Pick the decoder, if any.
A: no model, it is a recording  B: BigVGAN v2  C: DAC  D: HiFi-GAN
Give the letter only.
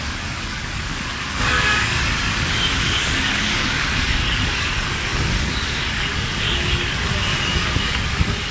C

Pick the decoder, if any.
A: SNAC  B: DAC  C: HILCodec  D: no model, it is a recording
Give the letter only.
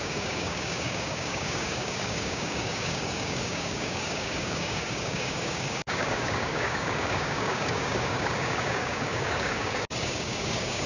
B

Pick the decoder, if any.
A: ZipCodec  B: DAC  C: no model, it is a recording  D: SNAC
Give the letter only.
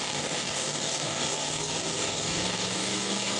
B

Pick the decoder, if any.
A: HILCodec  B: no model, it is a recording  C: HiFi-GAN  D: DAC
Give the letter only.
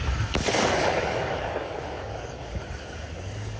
D